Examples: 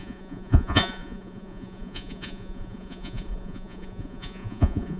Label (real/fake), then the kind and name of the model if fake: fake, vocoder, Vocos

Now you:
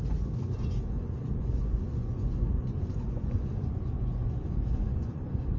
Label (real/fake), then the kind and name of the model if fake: fake, vocoder, Vocos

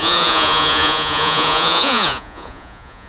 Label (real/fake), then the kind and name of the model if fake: fake, vocoder, Vocos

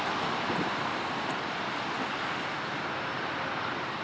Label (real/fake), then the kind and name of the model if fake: real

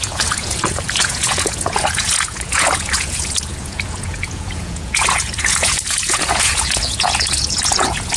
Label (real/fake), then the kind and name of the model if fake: fake, vocoder, Vocos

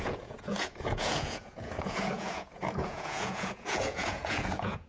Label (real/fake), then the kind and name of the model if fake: fake, vocoder, Vocos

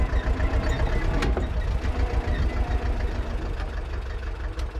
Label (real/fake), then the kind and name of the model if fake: real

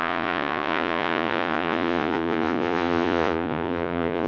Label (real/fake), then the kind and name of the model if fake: fake, vocoder, Vocos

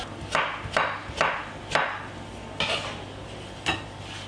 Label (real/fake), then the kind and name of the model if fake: real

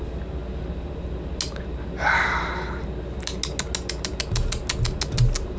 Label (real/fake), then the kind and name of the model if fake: real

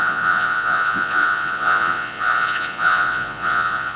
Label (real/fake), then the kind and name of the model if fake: fake, vocoder, Vocos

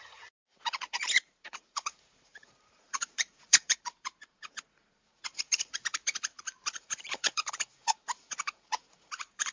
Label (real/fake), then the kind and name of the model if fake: fake, vocoder, Vocos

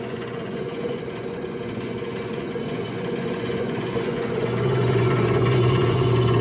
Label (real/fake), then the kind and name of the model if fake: fake, vocoder, Vocos